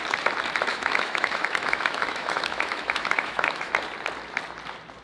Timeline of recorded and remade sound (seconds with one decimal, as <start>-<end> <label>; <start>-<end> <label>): 0.0-0.7 recorded; 0.7-3.7 remade; 3.7-5.0 recorded